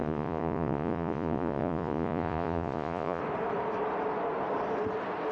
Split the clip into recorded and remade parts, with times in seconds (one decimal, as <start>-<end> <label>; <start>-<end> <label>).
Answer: 0.0-3.2 remade; 3.2-5.3 recorded